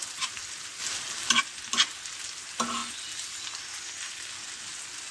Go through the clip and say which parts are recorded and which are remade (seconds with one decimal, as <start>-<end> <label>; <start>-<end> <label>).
0.0-5.1 recorded